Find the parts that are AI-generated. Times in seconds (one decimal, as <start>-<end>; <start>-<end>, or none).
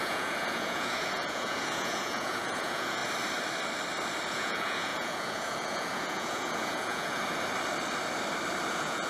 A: 0.0-3.0; 4.3-7.2; 8.7-9.1